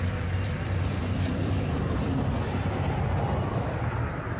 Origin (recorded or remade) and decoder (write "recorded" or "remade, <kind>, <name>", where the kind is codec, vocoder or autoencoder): remade, vocoder, BigVGAN v2